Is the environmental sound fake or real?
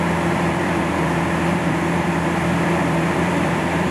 fake